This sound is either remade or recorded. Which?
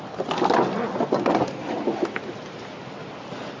recorded